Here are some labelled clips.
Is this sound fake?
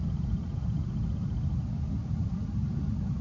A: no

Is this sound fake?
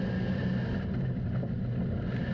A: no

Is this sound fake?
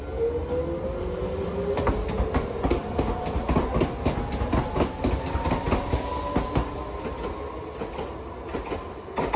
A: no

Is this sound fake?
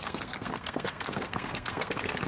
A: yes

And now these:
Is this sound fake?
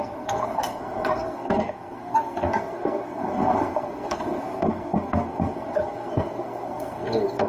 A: yes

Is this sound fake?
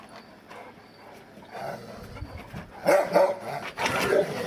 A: no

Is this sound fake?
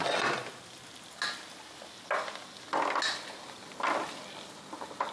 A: no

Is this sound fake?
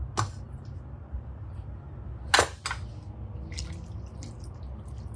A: no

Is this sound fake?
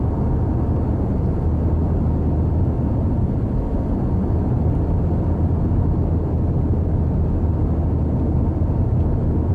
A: no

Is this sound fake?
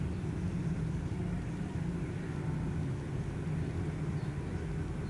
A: no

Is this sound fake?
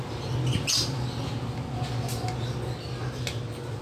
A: no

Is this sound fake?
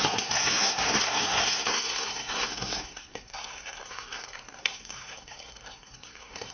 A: yes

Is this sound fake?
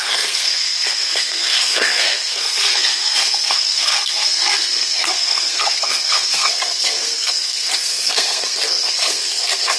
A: yes